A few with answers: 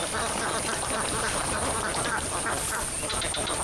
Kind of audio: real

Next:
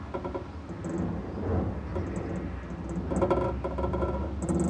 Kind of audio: real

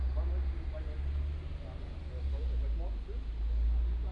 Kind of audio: real